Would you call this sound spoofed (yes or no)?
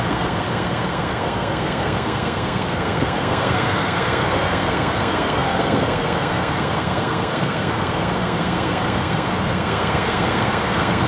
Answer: yes